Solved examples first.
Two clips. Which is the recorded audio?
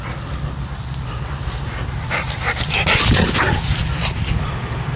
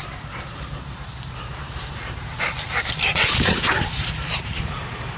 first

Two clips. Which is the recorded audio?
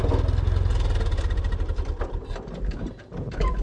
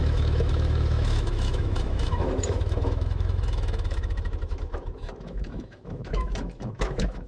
first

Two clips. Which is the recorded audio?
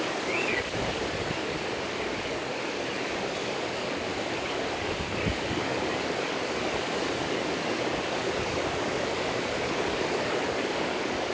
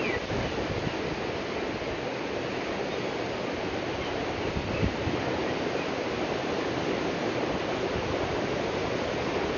second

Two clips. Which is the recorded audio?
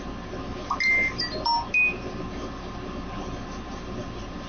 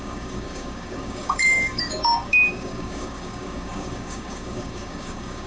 first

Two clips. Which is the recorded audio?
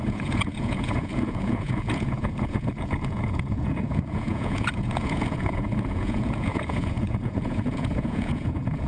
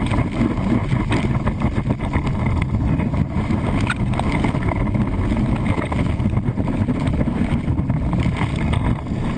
second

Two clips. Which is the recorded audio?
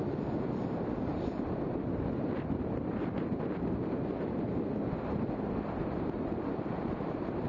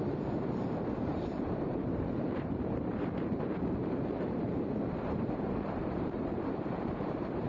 first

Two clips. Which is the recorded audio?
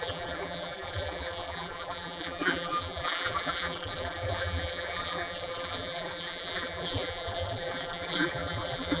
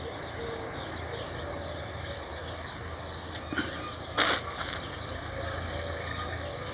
second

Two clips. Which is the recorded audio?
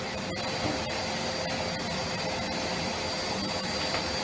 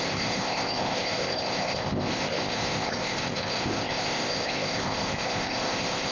first